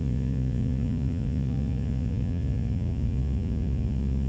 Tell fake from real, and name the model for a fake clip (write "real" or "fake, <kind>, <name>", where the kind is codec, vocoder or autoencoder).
fake, vocoder, Vocos